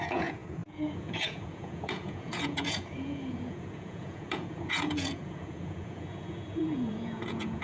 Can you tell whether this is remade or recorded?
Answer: remade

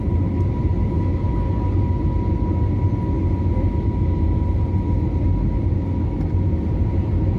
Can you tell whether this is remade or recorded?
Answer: recorded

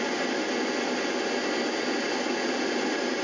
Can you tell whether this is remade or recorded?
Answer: recorded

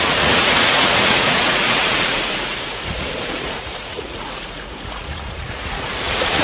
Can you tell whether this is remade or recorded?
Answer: remade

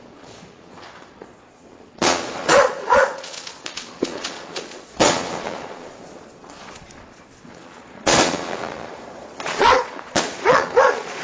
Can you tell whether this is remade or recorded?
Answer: remade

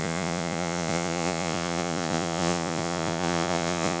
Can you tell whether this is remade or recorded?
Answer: remade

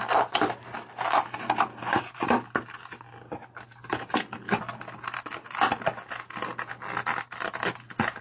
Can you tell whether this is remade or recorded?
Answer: recorded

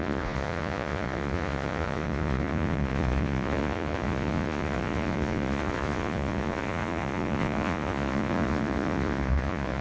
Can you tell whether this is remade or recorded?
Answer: remade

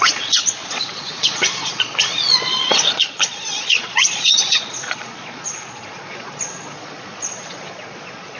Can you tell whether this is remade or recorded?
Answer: remade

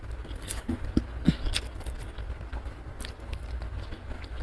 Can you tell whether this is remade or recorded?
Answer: recorded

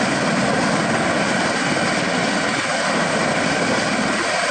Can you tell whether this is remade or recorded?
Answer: recorded